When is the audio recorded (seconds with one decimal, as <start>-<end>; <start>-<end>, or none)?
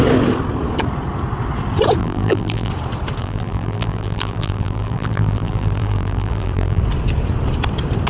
0.0-2.0; 2.7-3.2; 6.8-8.1